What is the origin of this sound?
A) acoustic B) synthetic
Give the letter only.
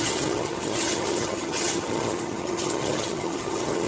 B